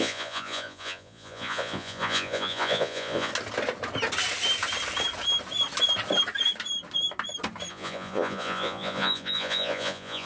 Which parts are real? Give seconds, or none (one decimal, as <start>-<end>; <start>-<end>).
3.3-7.7